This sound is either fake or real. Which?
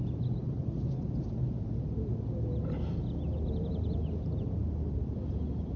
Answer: real